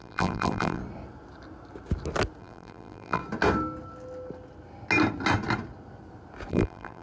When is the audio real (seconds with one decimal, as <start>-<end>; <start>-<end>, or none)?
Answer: 0.8-2.4; 3.2-6.5